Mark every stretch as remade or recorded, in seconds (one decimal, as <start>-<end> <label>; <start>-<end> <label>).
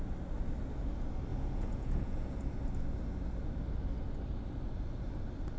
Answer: 0.0-1.3 recorded; 1.3-2.4 remade; 2.4-5.6 recorded